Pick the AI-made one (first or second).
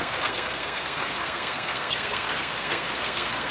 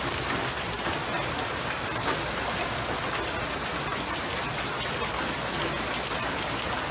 first